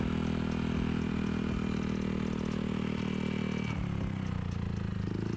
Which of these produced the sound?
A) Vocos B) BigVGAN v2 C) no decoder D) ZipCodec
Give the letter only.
C